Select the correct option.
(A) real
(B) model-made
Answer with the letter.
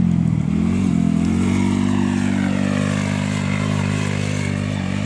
A